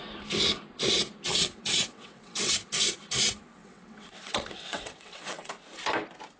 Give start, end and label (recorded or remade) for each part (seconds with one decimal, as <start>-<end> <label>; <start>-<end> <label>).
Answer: 0.0-1.3 recorded; 1.3-2.6 remade; 2.6-3.6 recorded; 3.6-5.5 remade; 5.5-6.4 recorded